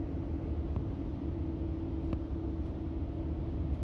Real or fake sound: real